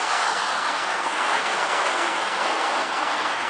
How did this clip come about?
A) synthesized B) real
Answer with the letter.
A